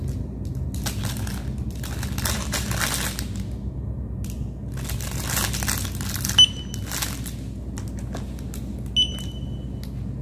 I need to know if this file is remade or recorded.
recorded